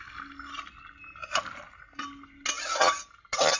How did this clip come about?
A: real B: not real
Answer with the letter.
A